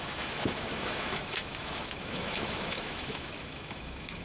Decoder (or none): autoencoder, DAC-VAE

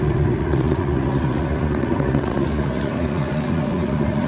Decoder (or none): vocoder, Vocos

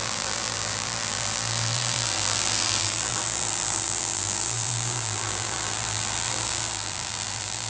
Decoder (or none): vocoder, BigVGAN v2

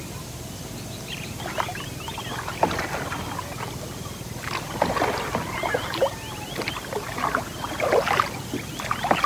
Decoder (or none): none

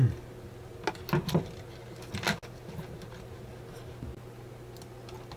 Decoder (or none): none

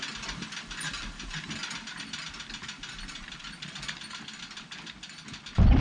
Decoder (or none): none